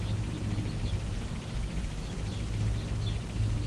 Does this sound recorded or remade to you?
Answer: recorded